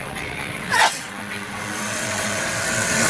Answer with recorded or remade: remade